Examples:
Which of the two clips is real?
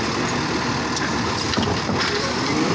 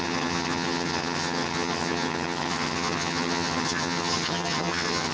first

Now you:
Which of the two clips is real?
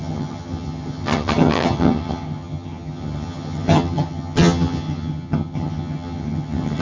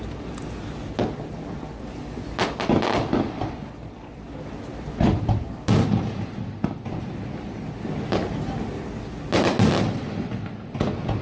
second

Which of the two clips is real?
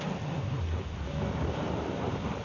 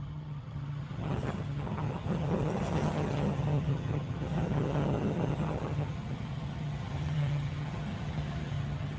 first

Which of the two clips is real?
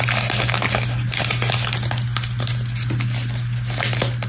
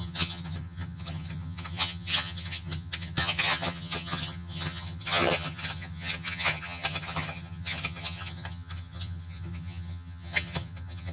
first